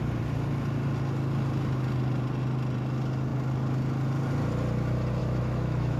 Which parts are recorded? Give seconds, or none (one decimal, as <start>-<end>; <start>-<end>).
0.0-5.2